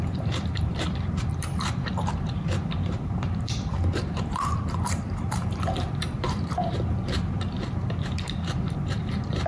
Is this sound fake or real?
fake